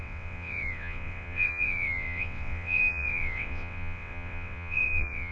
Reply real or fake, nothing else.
fake